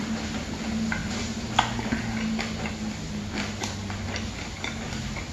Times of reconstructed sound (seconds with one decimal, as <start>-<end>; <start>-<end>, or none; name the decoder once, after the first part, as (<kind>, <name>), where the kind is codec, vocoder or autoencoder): none